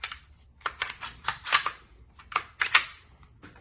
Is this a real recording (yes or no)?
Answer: yes